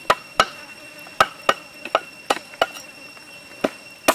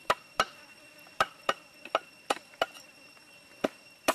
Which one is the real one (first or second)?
first